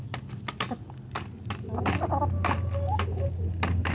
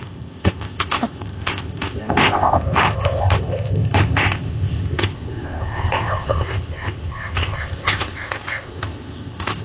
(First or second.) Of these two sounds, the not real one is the second